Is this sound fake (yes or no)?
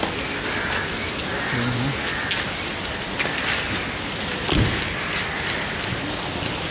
no